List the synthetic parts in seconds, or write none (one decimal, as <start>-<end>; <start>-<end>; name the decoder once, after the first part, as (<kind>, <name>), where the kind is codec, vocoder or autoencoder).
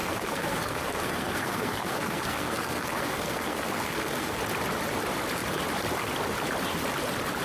0.0-4.4 (codec, SNAC)